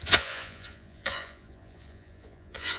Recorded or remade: remade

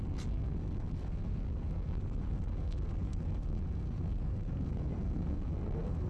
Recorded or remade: remade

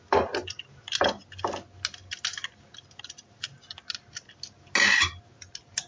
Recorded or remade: recorded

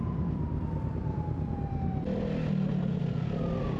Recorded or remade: recorded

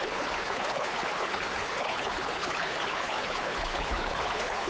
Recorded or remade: remade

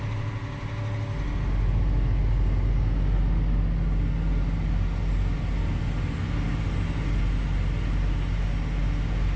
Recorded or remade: recorded